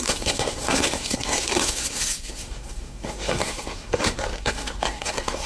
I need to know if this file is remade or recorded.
remade